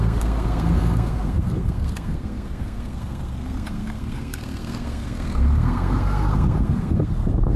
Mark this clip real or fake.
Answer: fake